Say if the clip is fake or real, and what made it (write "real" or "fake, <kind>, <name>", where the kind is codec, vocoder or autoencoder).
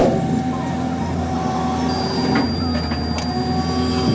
real